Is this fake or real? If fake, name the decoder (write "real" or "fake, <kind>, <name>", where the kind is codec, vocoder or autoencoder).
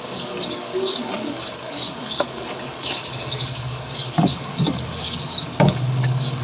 fake, codec, DAC